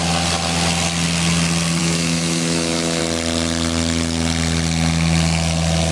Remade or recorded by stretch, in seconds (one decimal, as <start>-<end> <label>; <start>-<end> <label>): 0.0-1.8 recorded; 1.8-3.0 remade; 3.0-5.9 recorded